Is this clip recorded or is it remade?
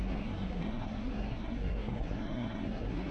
remade